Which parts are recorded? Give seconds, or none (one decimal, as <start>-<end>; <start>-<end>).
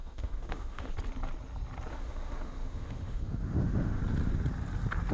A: 0.9-1.9; 4.0-5.1